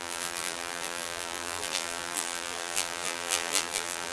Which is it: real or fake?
fake